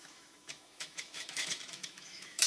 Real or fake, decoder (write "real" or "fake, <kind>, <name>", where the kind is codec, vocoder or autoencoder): fake, autoencoder, DAC-VAE